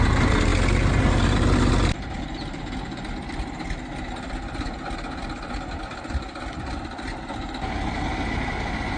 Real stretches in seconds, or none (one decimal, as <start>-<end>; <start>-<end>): 0.0-9.0

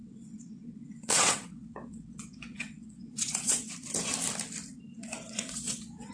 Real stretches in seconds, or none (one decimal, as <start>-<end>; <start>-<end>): 3.7-4.9

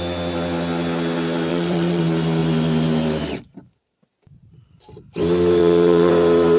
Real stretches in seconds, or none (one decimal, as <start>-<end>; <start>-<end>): 0.0-1.5; 2.0-5.6; 6.1-6.6

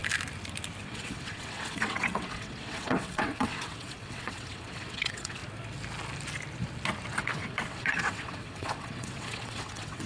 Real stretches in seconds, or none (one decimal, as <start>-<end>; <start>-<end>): 0.0-0.8; 5.4-7.2